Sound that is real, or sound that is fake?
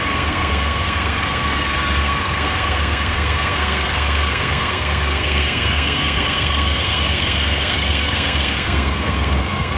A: fake